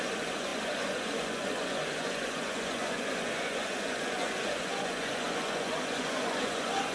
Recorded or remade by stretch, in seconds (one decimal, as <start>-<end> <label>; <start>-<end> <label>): 0.0-6.9 remade